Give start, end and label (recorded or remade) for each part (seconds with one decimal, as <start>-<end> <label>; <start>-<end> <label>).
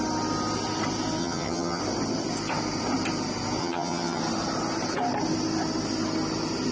0.0-1.2 recorded; 1.2-1.8 remade; 1.8-3.6 recorded; 3.6-4.2 remade; 4.2-6.7 recorded